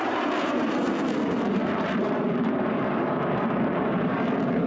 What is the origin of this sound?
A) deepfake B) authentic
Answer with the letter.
A